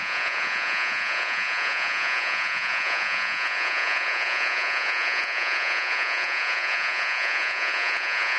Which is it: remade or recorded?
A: remade